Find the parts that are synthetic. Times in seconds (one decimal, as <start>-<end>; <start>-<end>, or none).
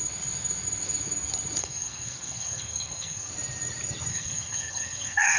1.6-3.3; 4.1-5.4